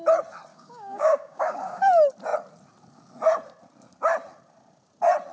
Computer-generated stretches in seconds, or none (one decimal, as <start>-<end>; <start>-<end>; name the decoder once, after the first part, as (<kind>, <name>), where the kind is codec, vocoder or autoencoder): 0.5-1.8 (codec, DAC)